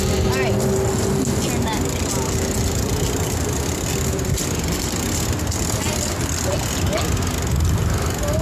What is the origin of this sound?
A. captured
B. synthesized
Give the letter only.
A